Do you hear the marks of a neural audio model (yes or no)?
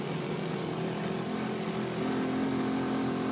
no